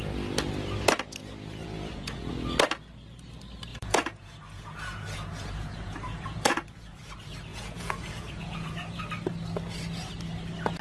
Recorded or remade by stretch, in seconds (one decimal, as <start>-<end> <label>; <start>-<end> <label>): 0.0-1.6 recorded; 1.6-2.3 remade; 2.3-3.7 recorded; 3.7-7.1 remade; 7.1-7.5 recorded; 7.5-9.0 remade; 9.0-10.8 recorded

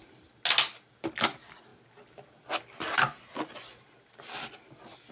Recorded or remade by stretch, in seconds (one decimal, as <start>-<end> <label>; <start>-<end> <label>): 0.0-5.1 recorded

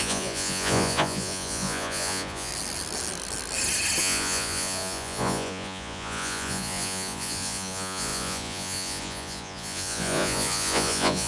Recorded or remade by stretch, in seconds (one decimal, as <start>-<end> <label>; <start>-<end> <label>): 0.0-2.5 remade; 2.5-4.0 recorded; 4.0-11.3 remade